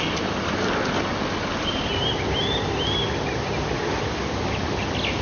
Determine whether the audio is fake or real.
real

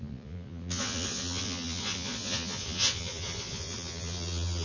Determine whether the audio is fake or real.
fake